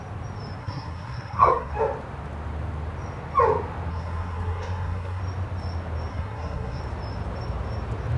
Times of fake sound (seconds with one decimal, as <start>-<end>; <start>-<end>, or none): 0.6-1.7; 3.9-5.2; 6.1-6.8